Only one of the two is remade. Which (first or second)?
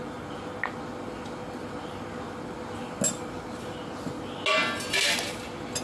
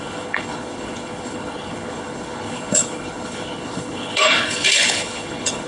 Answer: second